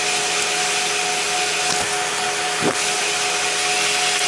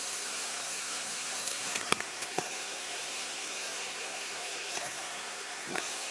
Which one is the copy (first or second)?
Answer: second